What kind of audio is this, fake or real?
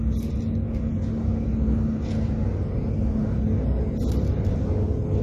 real